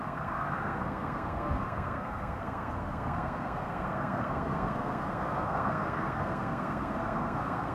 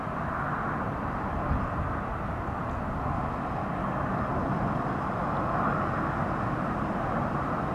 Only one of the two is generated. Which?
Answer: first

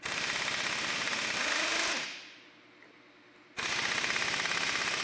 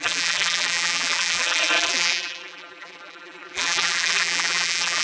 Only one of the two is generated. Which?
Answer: second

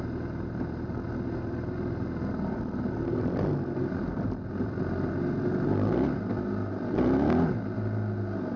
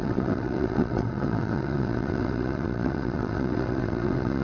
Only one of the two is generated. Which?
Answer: second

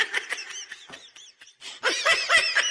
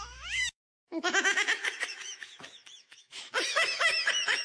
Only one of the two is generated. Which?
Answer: second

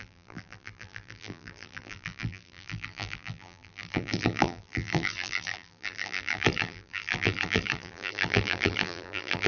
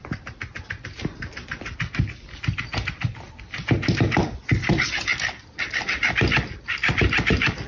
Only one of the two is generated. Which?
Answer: first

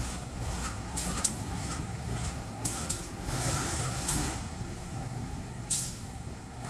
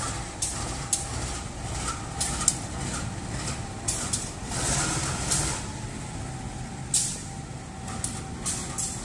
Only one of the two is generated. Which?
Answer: first